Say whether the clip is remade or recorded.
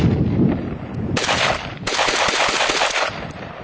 recorded